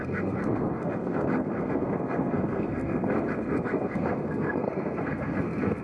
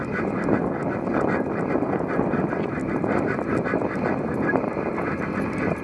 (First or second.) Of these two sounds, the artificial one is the first